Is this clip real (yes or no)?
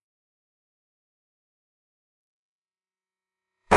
no